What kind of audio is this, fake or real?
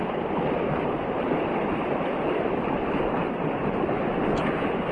real